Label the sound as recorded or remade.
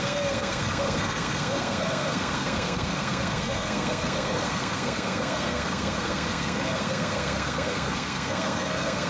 remade